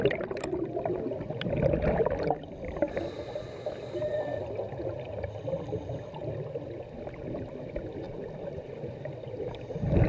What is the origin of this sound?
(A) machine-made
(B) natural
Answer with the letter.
A